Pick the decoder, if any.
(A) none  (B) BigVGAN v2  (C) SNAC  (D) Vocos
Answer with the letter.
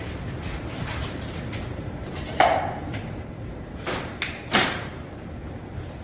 B